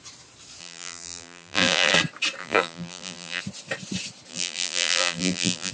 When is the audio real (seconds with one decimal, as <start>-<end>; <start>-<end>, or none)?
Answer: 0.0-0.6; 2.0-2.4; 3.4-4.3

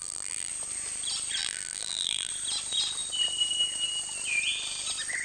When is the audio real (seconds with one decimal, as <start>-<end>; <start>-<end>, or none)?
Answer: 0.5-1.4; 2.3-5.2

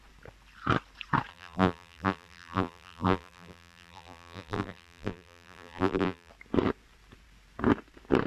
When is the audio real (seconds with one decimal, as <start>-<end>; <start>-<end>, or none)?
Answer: 0.0-1.3; 6.3-8.3

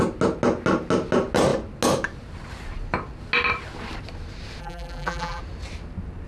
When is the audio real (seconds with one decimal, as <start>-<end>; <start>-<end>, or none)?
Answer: 0.0-4.6; 5.4-6.3

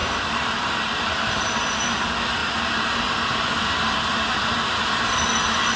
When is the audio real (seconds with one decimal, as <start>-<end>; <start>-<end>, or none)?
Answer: 1.8-2.4; 4.8-5.8

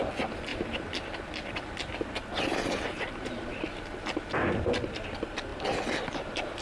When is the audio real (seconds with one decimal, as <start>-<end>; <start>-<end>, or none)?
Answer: 0.0-0.5; 1.9-5.5

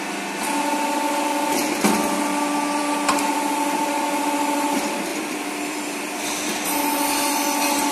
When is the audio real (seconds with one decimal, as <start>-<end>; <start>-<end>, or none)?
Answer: 0.0-5.1; 6.0-7.9

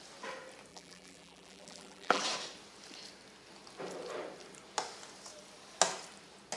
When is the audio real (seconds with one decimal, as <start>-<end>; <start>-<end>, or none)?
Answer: 0.0-0.7; 2.2-6.6